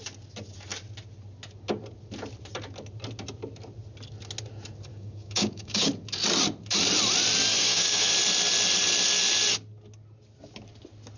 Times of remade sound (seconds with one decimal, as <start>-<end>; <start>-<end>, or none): 4.9-5.9; 7.5-8.1